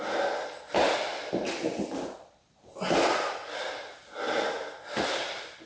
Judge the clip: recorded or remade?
recorded